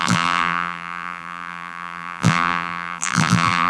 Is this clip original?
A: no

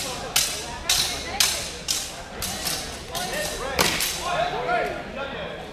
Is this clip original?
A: yes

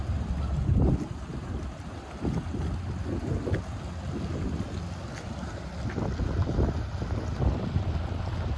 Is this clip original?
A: yes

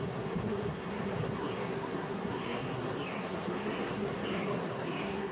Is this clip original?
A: no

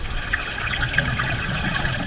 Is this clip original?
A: no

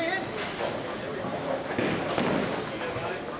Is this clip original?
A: yes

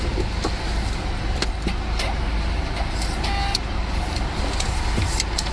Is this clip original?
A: yes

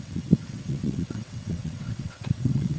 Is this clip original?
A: no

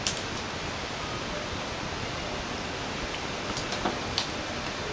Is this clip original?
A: yes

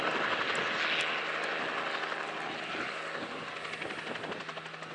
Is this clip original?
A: yes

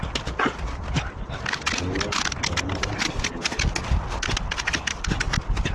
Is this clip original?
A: yes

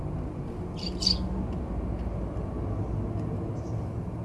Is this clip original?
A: yes